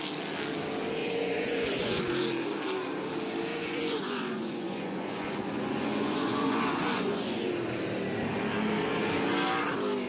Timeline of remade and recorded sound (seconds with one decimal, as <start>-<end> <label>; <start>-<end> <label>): 0.0-1.0 recorded; 1.0-2.0 remade; 2.0-3.5 recorded; 3.5-7.5 remade; 7.5-10.1 recorded

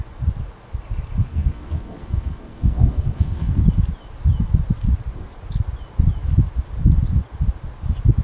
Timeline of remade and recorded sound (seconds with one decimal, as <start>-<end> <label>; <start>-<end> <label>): 0.0-1.2 recorded; 1.2-3.6 remade; 3.6-8.2 recorded

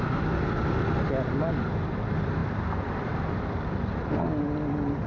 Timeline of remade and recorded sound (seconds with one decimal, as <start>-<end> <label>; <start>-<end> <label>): 0.0-5.1 recorded

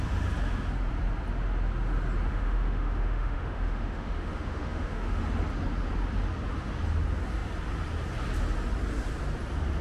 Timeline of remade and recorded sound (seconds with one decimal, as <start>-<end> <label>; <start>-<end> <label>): 0.0-2.3 recorded; 2.3-5.2 remade; 5.2-9.8 recorded

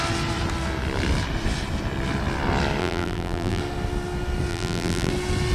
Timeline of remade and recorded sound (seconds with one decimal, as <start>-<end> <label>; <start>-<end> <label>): 0.0-2.8 recorded; 2.8-3.6 remade; 3.6-4.5 recorded; 4.5-5.1 remade; 5.1-5.5 recorded

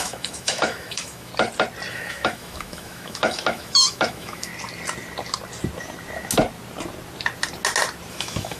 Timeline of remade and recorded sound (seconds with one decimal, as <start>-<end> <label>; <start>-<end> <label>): 0.0-1.3 remade; 1.3-1.9 recorded; 1.9-4.5 remade; 4.5-8.1 recorded; 8.1-8.6 remade

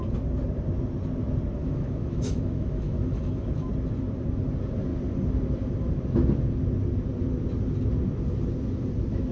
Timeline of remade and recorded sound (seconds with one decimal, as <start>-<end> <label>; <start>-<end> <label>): 0.0-1.6 recorded; 1.6-3.7 remade; 3.7-9.3 recorded

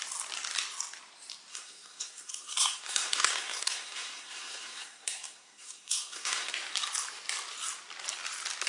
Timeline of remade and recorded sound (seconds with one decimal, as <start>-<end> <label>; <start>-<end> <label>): 0.0-1.5 recorded; 1.5-6.5 remade; 6.5-8.7 recorded